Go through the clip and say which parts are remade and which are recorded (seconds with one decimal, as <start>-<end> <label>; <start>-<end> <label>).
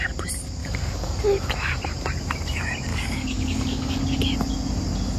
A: 0.0-0.6 recorded; 0.6-1.2 remade; 1.2-2.9 recorded; 2.9-4.0 remade; 4.0-5.2 recorded